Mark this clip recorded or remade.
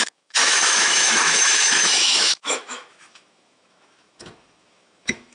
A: remade